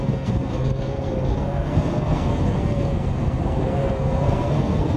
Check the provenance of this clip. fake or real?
fake